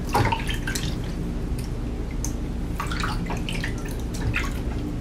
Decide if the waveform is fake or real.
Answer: real